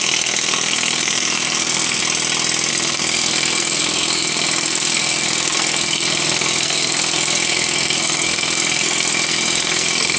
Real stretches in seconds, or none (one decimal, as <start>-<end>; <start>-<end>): 2.0-2.7